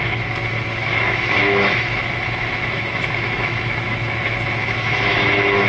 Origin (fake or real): fake